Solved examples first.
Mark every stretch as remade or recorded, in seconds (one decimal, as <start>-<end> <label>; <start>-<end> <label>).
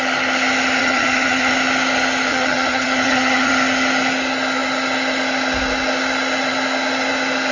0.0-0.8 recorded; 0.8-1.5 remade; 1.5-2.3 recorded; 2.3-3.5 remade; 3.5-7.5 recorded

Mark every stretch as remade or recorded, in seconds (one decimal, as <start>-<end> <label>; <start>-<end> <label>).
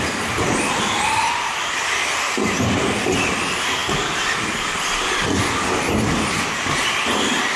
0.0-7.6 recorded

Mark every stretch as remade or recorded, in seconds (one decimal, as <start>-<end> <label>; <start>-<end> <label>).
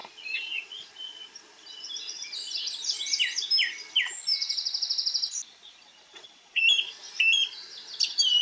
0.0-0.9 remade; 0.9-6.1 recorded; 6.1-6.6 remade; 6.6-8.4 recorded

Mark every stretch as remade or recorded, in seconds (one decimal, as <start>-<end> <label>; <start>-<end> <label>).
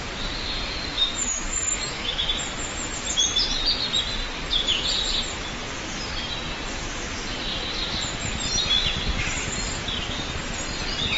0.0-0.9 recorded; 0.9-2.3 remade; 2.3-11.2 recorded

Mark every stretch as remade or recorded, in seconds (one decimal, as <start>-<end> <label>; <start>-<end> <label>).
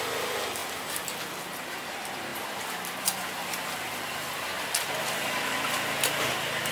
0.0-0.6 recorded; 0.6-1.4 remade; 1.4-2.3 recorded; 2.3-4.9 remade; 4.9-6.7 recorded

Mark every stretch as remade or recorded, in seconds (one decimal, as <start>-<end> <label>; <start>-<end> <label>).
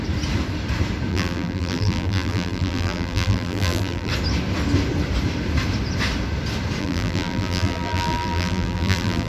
0.0-1.1 recorded; 1.1-4.1 remade; 4.1-6.8 recorded; 6.8-9.3 remade